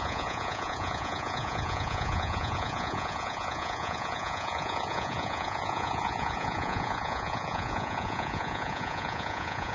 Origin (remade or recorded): remade